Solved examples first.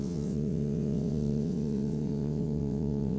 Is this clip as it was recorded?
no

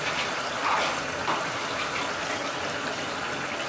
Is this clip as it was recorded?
yes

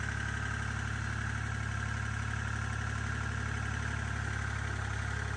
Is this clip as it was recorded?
yes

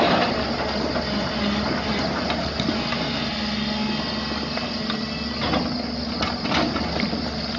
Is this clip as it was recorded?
yes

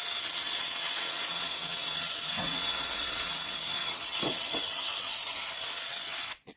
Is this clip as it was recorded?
no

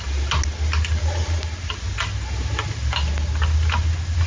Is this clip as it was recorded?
yes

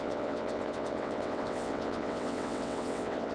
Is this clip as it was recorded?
no